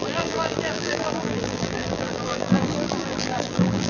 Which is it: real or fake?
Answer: fake